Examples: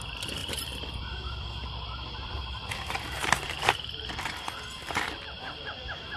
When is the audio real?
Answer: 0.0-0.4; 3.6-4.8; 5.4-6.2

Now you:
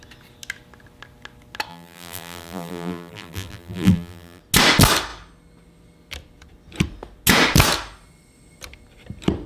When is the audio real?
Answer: 0.0-1.7; 4.4-9.5

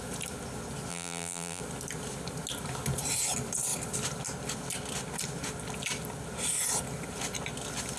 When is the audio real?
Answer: 0.0-0.9; 1.6-8.0